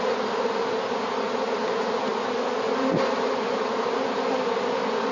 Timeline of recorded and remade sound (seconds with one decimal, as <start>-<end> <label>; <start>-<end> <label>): 0.0-5.1 recorded